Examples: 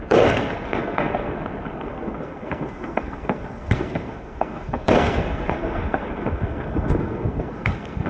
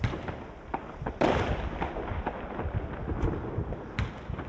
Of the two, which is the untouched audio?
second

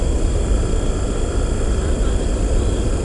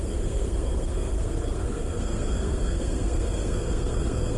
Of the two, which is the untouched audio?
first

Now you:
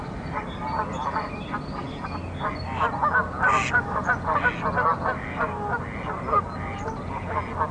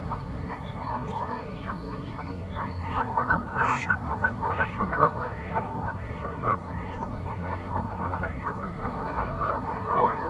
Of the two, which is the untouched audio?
first